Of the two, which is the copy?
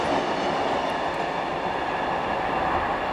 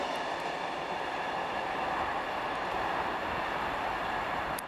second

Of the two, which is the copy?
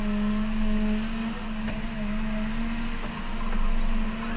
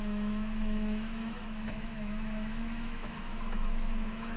second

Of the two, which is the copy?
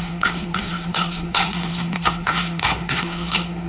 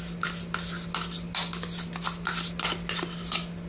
first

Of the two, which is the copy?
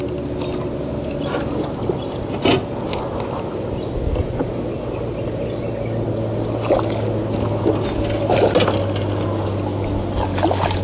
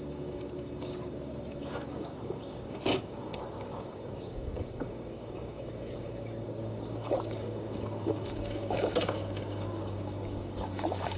second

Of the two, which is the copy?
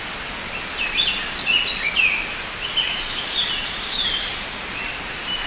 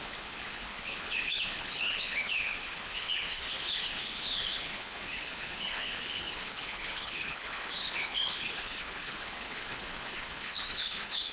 second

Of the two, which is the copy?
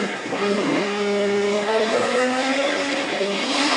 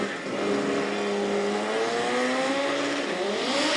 first